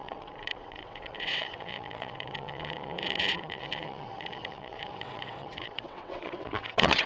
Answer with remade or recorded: remade